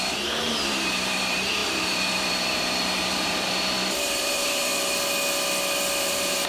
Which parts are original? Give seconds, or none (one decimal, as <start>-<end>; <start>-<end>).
4.7-6.0